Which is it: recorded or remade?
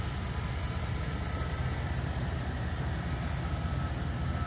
recorded